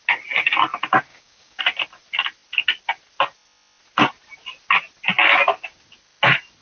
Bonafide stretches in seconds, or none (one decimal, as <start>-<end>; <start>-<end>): 0.0-1.1; 1.6-6.6